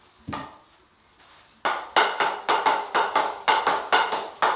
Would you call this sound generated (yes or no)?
no